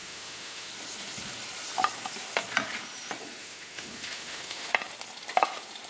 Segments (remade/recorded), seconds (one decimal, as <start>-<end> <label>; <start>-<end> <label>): 0.0-0.7 remade; 0.7-3.4 recorded; 3.4-4.7 remade; 4.7-5.9 recorded